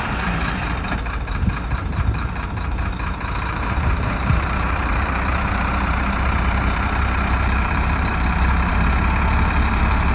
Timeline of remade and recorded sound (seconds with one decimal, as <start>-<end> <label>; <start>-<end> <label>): 0.0-8.7 remade; 8.7-9.3 recorded; 9.3-10.1 remade